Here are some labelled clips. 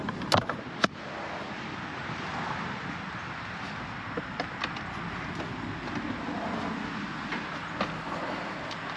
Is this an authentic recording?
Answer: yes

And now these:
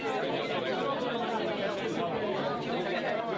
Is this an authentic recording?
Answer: yes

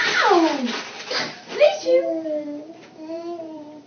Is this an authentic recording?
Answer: no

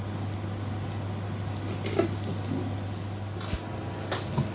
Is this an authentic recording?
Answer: yes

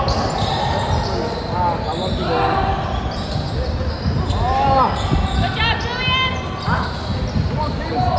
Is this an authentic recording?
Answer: yes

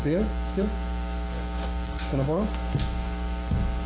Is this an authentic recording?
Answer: no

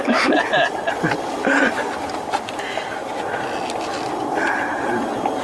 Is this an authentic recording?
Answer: yes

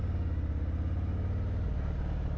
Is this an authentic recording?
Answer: yes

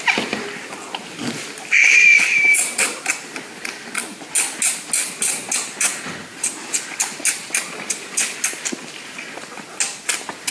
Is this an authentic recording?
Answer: yes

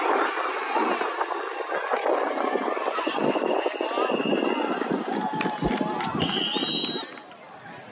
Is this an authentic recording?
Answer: yes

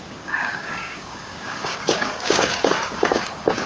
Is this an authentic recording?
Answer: no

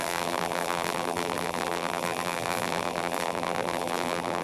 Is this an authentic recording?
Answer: no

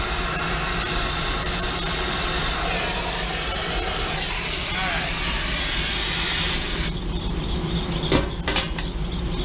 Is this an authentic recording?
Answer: yes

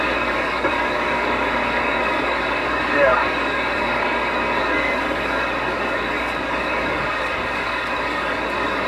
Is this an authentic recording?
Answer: no